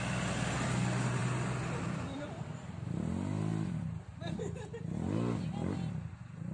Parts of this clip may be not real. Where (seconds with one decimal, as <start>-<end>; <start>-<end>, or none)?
none